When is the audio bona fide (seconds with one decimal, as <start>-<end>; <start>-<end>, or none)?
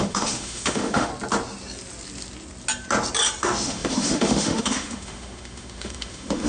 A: 1.1-3.4